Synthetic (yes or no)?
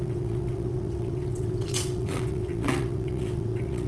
yes